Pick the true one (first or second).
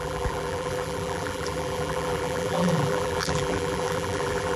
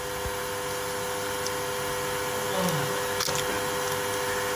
second